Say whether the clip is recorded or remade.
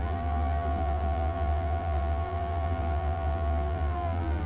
remade